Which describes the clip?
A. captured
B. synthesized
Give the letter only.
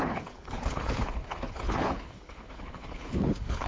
B